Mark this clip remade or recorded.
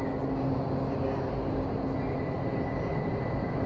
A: recorded